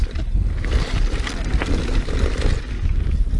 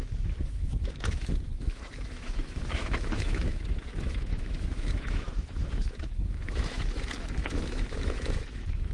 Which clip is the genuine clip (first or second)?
first